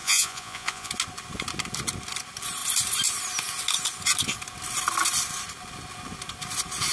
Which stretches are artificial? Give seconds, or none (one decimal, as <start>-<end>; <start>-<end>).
0.0-0.9